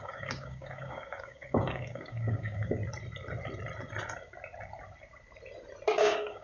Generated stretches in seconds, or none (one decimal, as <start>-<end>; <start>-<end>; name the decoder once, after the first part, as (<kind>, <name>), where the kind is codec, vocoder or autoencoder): 0.0-2.8 (codec, DAC); 5.9-6.4